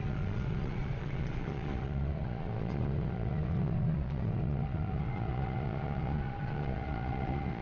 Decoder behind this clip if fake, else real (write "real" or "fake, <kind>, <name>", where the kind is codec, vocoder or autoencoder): fake, vocoder, Vocos